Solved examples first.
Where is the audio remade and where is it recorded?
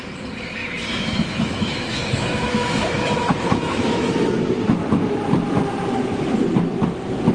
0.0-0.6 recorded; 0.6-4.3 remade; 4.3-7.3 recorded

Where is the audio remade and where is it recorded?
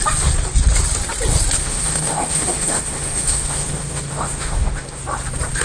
0.0-1.6 recorded; 1.6-5.0 remade; 5.0-5.6 recorded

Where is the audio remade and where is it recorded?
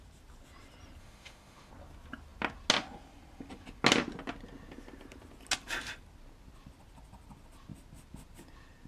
0.0-1.0 recorded; 1.0-1.7 remade; 1.7-8.9 recorded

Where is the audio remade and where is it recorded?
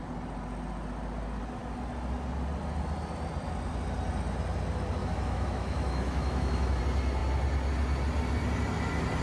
0.0-5.0 recorded; 5.0-6.8 remade; 6.8-9.2 recorded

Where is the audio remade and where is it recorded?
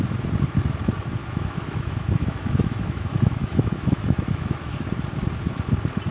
0.0-1.2 recorded; 1.2-4.9 remade; 4.9-6.1 recorded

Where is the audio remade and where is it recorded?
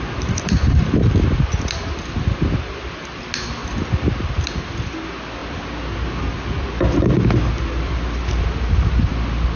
0.0-9.6 recorded